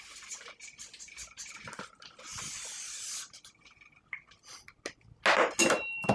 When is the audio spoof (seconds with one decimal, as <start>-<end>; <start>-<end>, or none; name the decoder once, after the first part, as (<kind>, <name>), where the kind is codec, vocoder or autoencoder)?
none